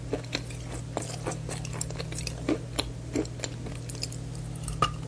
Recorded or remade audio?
recorded